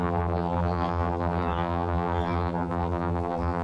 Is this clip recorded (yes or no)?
no